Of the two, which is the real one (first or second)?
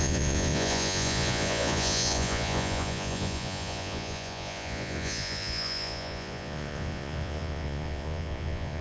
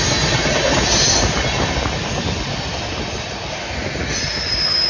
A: second